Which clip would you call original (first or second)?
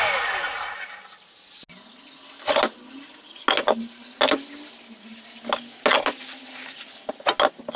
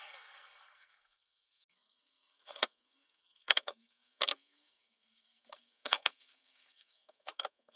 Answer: first